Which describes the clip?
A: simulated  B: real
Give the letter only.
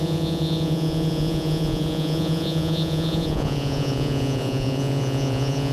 A